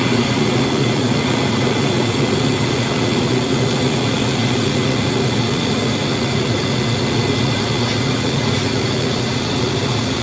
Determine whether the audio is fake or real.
fake